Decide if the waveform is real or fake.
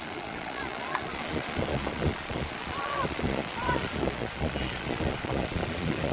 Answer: fake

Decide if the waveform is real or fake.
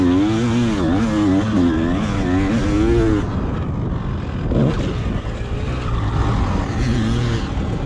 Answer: real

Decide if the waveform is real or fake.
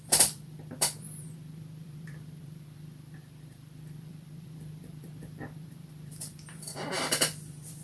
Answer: fake